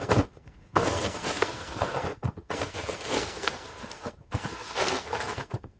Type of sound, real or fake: fake